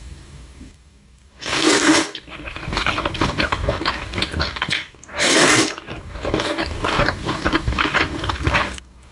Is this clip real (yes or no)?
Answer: no